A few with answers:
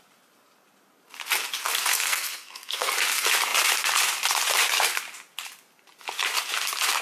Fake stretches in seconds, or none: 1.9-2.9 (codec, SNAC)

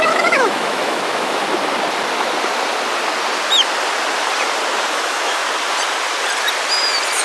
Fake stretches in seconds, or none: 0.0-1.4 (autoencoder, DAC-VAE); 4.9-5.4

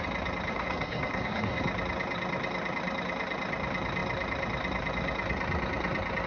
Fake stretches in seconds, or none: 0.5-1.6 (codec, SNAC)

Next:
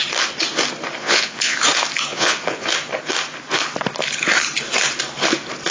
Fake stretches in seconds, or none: 1.0-1.6 (vocoder, Vocos); 2.1-2.7